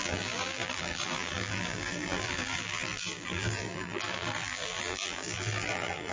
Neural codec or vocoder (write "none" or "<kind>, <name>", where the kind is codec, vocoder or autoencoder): vocoder, BigVGAN v2